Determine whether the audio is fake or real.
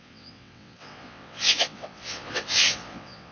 fake